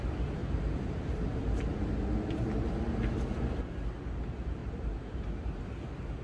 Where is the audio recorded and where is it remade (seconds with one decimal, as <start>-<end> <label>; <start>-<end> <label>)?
0.0-0.4 recorded; 0.4-1.6 remade; 1.6-4.6 recorded; 4.6-5.6 remade; 5.6-6.2 recorded